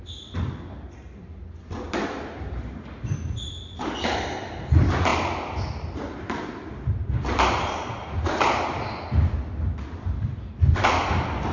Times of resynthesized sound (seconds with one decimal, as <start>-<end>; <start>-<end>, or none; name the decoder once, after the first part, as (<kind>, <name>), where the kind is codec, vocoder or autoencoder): none